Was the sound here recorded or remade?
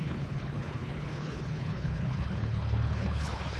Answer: remade